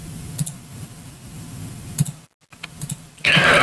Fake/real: real